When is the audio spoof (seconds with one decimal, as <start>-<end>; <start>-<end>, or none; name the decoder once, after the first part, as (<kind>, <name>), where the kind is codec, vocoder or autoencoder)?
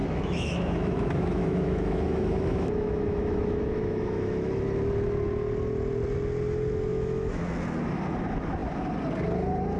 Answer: 0.0-4.6 (autoencoder, DAC-VAE); 6.9-7.4